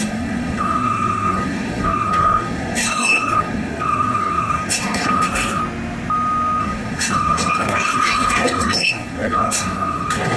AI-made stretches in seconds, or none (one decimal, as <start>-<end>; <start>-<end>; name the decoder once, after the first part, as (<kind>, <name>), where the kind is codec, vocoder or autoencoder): 0.0-5.6 (codec, SNAC); 6.6-10.4